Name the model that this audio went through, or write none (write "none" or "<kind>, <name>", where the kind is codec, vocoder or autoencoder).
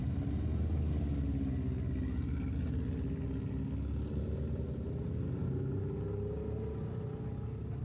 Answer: none